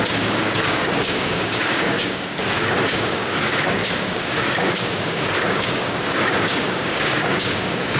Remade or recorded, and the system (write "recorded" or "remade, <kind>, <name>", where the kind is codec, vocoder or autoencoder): remade, codec, DAC